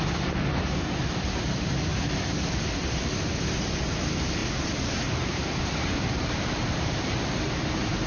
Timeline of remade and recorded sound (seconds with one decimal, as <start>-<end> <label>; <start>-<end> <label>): 0.0-4.4 recorded; 4.4-7.5 remade; 7.5-8.1 recorded